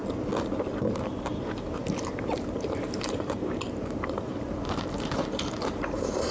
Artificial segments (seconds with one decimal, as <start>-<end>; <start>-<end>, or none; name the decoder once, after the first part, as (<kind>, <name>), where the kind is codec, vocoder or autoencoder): 0.7-6.3 (vocoder, BigVGAN v2)